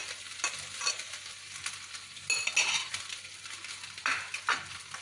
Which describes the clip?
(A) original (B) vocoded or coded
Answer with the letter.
A